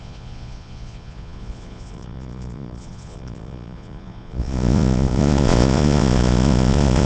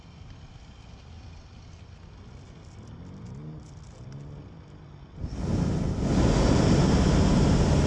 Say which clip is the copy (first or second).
first